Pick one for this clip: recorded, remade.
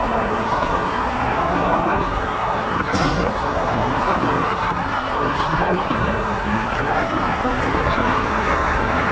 remade